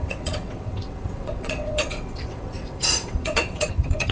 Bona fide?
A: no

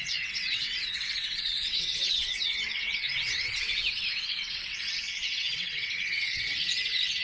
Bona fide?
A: no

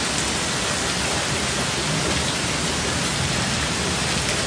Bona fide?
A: yes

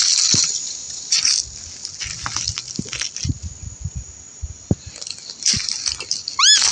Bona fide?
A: yes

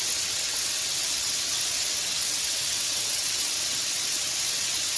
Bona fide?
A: no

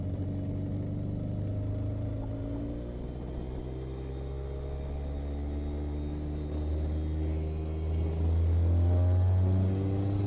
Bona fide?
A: yes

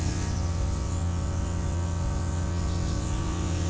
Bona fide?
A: no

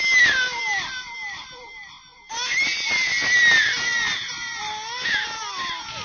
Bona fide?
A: yes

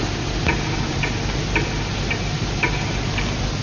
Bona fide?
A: yes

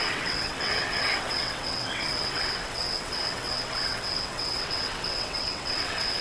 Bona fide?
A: no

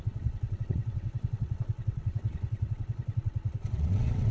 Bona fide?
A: no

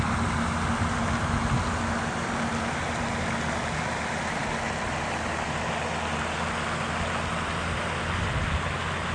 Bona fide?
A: yes